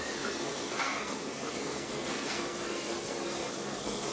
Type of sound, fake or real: fake